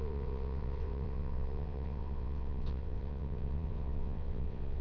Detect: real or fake fake